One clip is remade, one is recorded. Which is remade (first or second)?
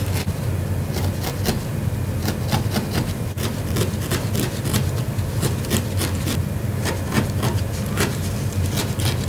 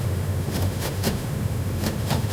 second